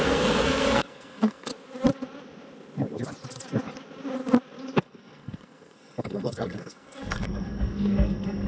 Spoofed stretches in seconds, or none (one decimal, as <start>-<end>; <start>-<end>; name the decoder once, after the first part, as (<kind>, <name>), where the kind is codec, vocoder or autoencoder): 0.0-1.5 (codec, SNAC); 4.8-8.5